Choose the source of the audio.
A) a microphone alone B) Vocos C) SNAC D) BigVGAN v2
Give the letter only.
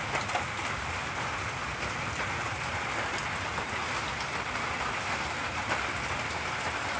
A